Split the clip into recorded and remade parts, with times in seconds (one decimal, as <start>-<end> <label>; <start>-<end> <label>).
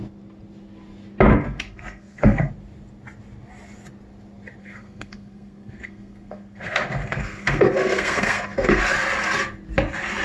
0.0-1.3 recorded; 1.3-2.5 remade; 2.5-4.6 recorded; 4.6-8.8 remade; 8.8-10.2 recorded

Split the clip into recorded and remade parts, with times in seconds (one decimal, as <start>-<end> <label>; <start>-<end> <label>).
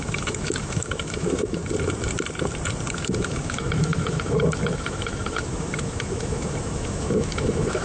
0.0-1.6 remade; 1.6-2.9 recorded; 2.9-7.8 remade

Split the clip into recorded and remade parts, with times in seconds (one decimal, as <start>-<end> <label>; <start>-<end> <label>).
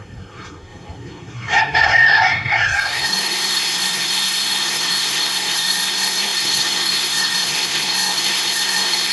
0.0-9.1 remade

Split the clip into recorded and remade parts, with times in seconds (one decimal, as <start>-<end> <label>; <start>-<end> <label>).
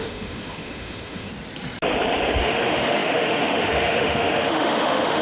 0.0-1.3 remade; 1.3-2.4 recorded; 2.4-5.2 remade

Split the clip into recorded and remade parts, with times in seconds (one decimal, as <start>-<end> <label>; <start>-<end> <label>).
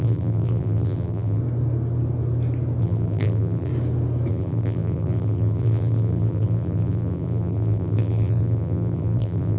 0.0-1.4 remade; 1.4-2.8 recorded; 2.8-3.7 remade; 3.7-4.3 recorded; 4.3-9.6 remade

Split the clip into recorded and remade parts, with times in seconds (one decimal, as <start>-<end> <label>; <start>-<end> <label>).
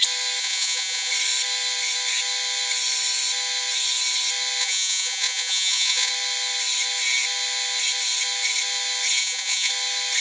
0.0-0.4 recorded; 0.4-1.1 remade; 1.1-4.6 recorded; 4.6-6.1 remade; 6.1-9.2 recorded; 9.2-9.7 remade; 9.7-10.2 recorded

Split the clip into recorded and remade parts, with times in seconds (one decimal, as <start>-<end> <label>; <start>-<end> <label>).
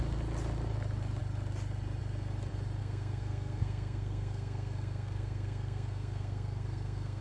0.0-2.8 recorded; 2.8-7.2 remade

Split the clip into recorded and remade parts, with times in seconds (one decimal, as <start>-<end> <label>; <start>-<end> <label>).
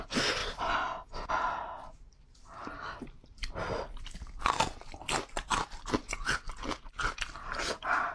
0.0-0.4 remade; 0.4-1.3 recorded; 1.3-6.0 remade; 6.0-7.2 recorded; 7.2-8.1 remade